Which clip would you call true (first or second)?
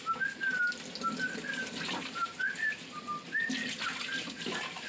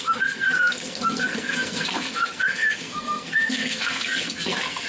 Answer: first